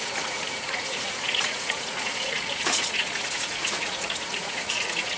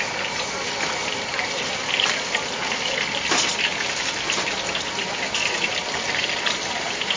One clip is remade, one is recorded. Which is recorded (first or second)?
second